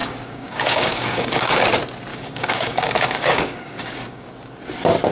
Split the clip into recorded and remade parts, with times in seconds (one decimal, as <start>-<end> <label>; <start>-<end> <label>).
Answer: 0.0-1.6 remade; 1.6-2.1 recorded; 2.1-4.3 remade; 4.3-5.1 recorded

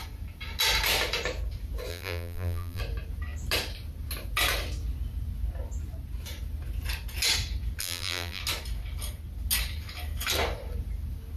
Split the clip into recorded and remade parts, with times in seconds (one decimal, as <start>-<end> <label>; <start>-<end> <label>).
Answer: 0.0-1.9 recorded; 1.9-2.8 remade; 2.8-7.8 recorded; 7.8-8.4 remade; 8.4-11.4 recorded

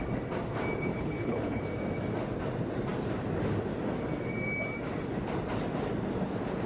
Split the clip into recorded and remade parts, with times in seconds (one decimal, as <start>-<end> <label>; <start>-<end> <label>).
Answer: 0.0-0.9 recorded; 0.9-1.6 remade; 1.6-6.7 recorded

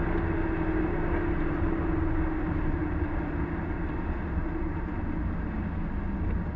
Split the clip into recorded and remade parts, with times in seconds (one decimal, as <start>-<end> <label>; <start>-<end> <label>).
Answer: 0.0-6.6 recorded

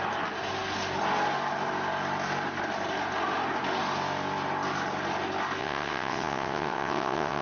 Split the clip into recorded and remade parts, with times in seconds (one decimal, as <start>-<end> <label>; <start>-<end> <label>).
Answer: 0.0-5.6 recorded; 5.6-7.4 remade